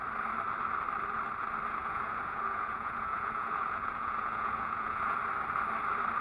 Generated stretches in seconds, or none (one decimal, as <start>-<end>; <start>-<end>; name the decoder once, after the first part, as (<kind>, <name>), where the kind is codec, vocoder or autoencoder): 1.8-5.2 (vocoder, Vocos)

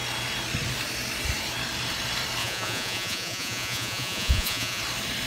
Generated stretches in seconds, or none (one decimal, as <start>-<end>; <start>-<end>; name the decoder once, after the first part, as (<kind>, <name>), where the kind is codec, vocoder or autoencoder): 2.4-4.8 (vocoder, Vocos)

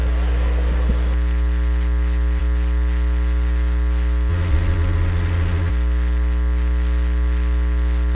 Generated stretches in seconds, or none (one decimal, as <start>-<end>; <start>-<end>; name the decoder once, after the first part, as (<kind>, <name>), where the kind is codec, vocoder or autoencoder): 4.3-5.7 (vocoder, Vocos)

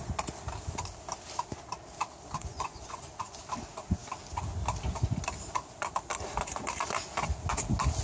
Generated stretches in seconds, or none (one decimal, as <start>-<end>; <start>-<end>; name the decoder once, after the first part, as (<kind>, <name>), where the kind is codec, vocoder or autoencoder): 2.4-3.4 (vocoder, Vocos)

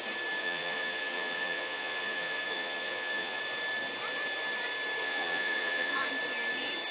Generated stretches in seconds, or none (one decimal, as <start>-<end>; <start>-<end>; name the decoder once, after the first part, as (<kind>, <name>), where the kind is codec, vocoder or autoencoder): 0.4-3.4 (vocoder, Vocos); 5.0-6.1

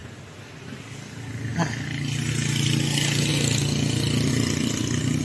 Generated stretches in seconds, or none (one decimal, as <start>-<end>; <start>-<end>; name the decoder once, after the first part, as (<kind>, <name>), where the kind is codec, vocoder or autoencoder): none

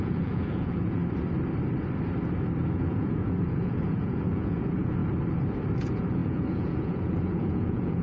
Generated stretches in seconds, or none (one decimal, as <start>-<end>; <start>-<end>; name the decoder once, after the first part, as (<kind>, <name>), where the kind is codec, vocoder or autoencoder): 0.0-1.0 (vocoder, Vocos); 2.7-5.0; 5.8-8.0